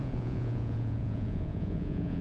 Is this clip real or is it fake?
fake